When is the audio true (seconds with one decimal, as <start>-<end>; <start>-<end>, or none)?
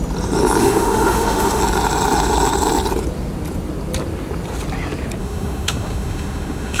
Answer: 0.0-0.6; 1.6-5.2